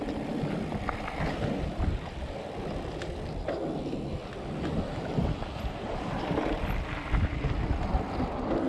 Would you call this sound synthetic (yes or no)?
no